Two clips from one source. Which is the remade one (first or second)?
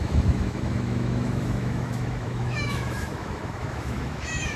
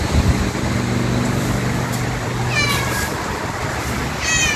first